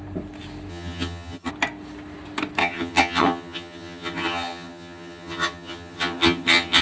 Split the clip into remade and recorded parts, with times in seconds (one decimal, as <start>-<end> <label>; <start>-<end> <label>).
0.0-0.7 recorded; 0.7-1.5 remade; 1.5-2.6 recorded; 2.6-6.8 remade